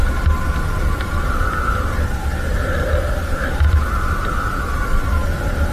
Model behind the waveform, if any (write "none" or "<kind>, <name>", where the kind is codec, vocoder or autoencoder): none